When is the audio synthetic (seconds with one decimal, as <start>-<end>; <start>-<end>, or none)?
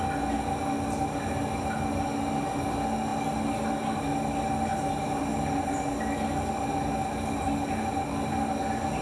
none